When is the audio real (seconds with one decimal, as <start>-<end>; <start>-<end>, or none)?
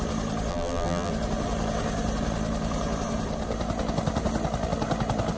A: 0.0-0.5; 1.1-5.4